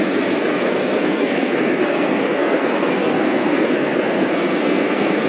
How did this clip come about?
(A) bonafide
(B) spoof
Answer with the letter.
B